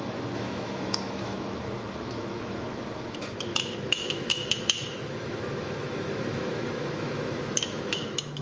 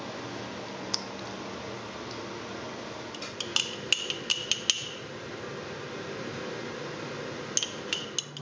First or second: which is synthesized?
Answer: first